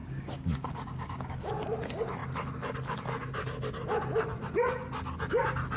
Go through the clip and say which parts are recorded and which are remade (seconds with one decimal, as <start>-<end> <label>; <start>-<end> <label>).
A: 0.0-1.5 remade; 1.5-5.8 recorded